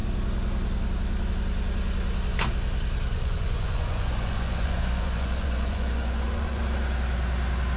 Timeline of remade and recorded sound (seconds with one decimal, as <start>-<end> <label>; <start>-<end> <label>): 0.0-3.1 recorded; 3.1-6.6 remade; 6.6-7.8 recorded